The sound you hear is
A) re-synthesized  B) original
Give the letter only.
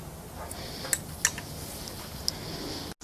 B